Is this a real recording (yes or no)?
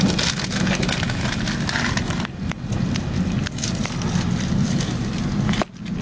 yes